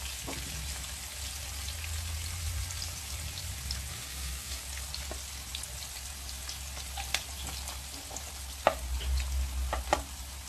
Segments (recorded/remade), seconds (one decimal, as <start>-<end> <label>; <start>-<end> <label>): 0.0-3.9 recorded; 3.9-4.6 remade; 4.6-10.5 recorded

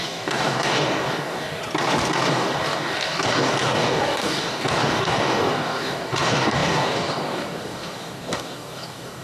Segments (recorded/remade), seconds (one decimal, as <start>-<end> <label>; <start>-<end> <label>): 0.0-1.6 remade; 1.6-2.3 recorded; 2.3-9.2 remade

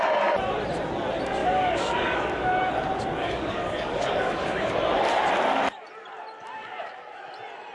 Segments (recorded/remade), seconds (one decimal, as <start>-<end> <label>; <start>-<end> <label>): 0.0-1.4 recorded; 1.4-2.7 remade; 2.7-3.2 recorded; 3.2-4.8 remade; 4.8-6.6 recorded; 6.6-7.2 remade; 7.2-7.7 recorded